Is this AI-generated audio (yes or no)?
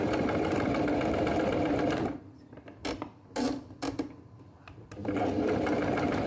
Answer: yes